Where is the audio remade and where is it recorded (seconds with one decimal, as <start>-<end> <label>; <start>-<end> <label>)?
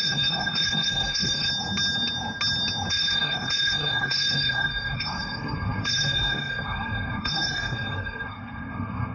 0.0-1.5 remade; 1.5-2.9 recorded; 2.9-9.1 remade